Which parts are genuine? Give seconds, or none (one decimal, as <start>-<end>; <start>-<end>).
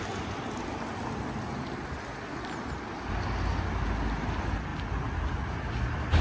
0.0-6.2